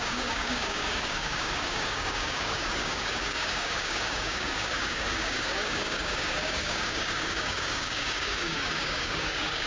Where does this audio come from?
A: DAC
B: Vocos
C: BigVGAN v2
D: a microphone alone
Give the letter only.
A